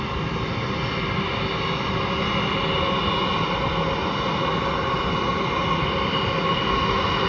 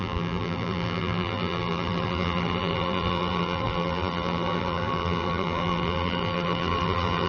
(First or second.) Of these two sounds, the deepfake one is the second